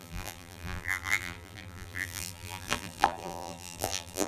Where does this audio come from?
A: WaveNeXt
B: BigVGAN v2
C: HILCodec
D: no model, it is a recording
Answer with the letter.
B